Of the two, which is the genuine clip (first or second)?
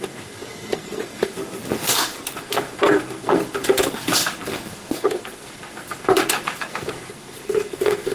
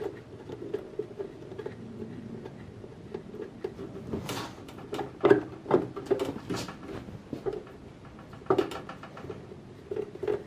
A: second